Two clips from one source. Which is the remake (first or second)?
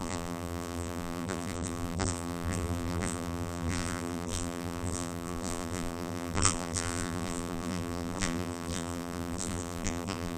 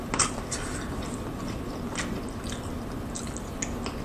first